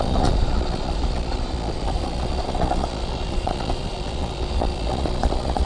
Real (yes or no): no